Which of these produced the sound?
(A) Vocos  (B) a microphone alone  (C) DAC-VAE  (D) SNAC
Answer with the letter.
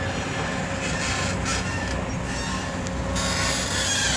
B